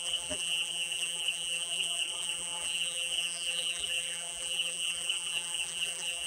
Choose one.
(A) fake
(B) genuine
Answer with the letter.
A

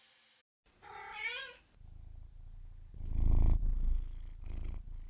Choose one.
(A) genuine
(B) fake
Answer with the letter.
A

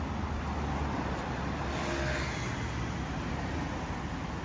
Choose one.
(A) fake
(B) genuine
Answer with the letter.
B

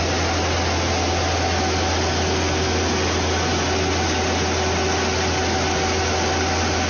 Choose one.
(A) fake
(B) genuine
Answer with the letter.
B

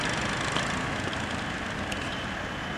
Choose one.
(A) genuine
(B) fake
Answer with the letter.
A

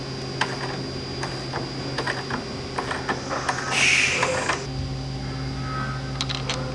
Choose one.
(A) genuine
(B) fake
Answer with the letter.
A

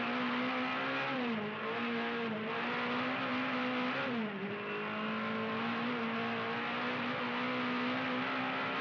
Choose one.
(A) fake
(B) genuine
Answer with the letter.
B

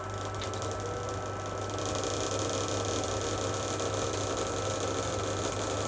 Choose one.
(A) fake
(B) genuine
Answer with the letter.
B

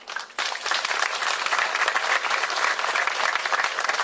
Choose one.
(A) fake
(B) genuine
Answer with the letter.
B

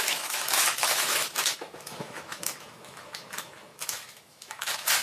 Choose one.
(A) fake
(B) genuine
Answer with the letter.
A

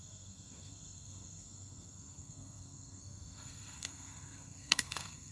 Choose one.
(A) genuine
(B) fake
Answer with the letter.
B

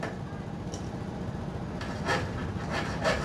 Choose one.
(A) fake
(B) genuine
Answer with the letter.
B